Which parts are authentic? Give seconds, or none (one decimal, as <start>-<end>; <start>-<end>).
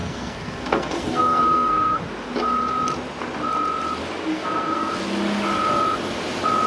2.0-4.3; 4.9-6.7